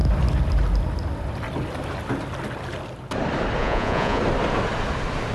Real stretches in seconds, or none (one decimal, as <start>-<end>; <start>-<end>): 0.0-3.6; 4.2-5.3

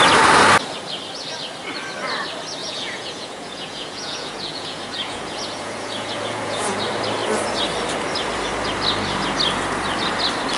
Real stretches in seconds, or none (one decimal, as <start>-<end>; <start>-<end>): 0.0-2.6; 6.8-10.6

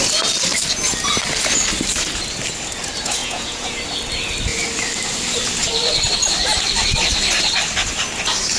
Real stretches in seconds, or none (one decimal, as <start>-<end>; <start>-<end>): 0.0-3.2; 3.8-8.6

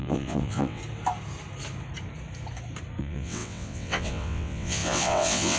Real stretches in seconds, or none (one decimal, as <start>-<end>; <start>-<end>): 0.8-3.0

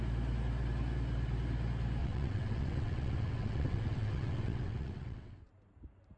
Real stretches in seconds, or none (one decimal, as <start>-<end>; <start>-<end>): 0.0-2.0; 5.5-6.2

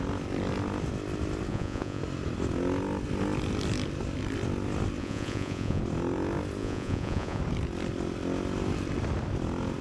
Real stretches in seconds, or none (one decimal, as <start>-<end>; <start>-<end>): 0.0-1.5; 2.0-5.0; 5.8-6.6; 7.4-9.8